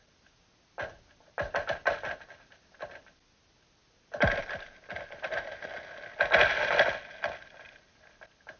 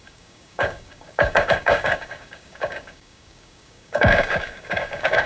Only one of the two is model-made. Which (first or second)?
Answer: second